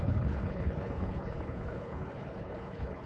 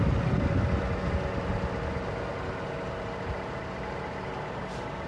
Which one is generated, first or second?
first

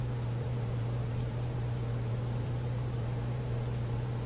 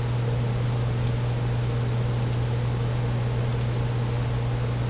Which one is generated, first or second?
first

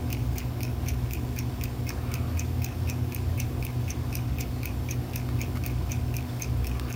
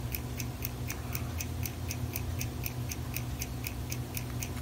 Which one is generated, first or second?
first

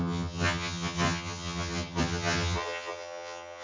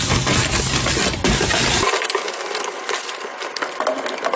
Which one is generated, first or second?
first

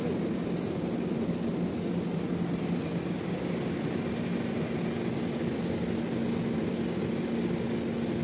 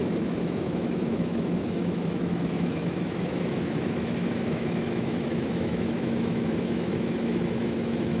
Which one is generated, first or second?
second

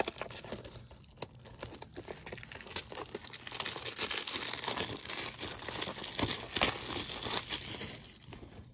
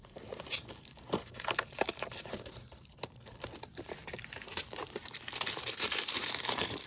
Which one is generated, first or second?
second